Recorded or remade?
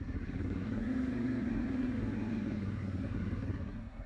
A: remade